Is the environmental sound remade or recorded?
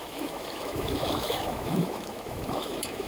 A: remade